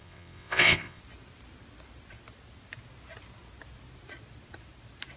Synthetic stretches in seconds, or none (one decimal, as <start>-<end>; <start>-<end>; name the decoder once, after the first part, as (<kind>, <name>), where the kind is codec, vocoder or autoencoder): 0.0-1.0 (vocoder, WaveNeXt)